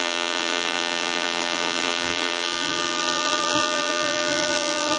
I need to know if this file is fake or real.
fake